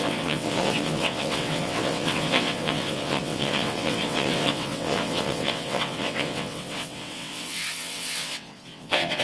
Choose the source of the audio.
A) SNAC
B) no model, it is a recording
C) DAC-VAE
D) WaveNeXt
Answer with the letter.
D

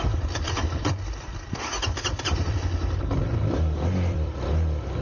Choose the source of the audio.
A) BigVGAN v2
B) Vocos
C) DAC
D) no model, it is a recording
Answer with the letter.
A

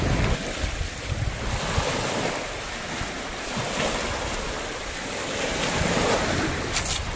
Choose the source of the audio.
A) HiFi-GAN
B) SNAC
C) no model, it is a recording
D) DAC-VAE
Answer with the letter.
C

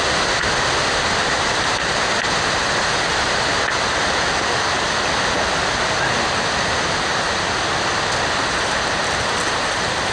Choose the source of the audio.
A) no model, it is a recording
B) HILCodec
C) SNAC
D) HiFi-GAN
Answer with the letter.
A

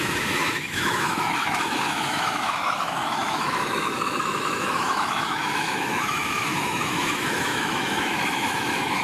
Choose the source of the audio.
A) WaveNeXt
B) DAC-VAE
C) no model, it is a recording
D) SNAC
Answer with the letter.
B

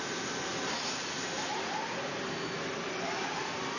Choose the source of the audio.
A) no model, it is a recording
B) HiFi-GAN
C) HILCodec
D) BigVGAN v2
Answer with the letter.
A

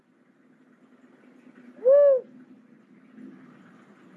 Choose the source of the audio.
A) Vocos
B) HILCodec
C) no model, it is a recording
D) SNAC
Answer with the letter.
C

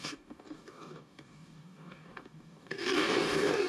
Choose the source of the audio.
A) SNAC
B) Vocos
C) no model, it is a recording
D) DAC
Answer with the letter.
D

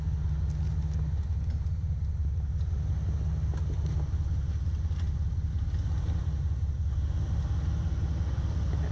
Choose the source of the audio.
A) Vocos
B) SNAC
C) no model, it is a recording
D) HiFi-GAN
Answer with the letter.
C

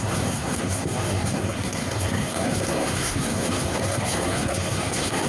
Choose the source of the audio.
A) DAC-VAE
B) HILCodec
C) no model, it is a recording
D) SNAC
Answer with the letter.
D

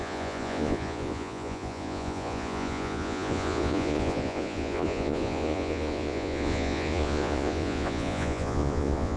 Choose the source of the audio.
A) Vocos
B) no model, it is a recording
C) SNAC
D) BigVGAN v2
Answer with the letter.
A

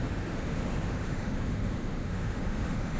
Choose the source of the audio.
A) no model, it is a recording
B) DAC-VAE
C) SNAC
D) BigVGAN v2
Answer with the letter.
B